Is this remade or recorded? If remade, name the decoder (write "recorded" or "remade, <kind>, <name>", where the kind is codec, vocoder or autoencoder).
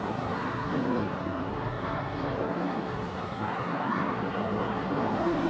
remade, codec, SNAC